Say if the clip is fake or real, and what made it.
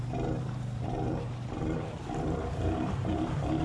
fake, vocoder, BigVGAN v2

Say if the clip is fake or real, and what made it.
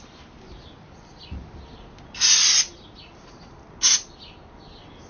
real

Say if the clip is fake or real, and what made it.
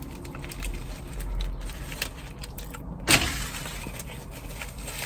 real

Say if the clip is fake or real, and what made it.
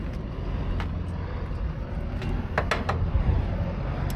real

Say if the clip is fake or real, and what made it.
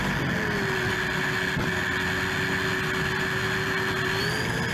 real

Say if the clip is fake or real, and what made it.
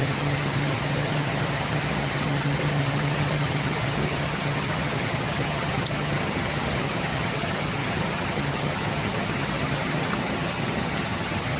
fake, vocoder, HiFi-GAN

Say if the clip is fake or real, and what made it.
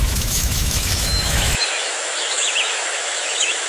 fake, autoencoder, DAC-VAE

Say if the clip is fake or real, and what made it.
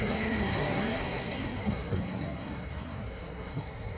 fake, codec, SNAC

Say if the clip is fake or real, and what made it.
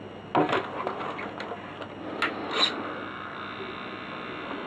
real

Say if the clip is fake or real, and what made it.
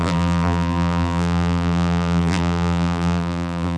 fake, vocoder, BigVGAN v2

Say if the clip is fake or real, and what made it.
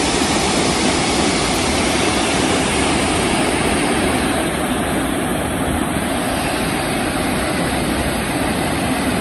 real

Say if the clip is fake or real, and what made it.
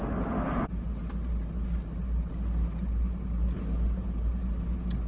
real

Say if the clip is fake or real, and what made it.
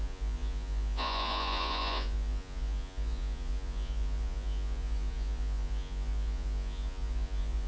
fake, vocoder, Vocos